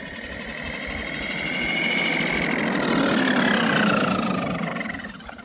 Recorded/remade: recorded